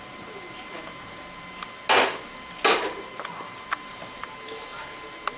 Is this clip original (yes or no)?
yes